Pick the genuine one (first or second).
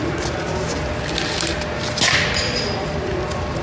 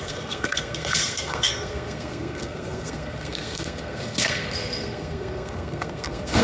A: first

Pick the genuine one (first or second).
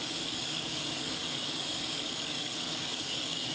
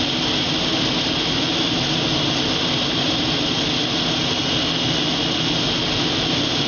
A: second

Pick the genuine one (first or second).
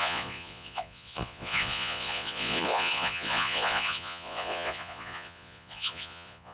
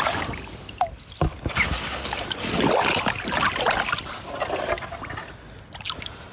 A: second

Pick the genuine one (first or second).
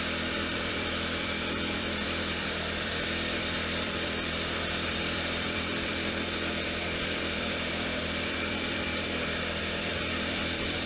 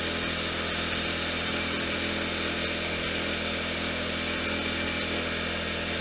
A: second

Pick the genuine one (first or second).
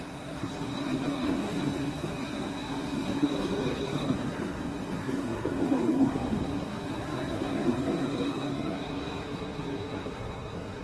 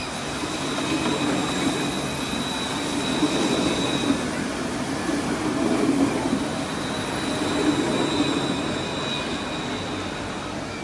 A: second